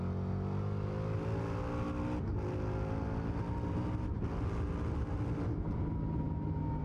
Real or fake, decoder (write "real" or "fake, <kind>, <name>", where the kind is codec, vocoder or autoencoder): real